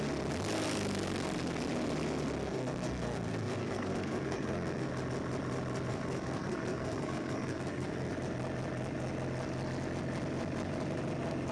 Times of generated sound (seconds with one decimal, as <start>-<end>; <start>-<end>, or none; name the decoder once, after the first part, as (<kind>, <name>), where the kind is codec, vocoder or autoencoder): 2.5-4.9 (codec, SNAC); 5.9-8.1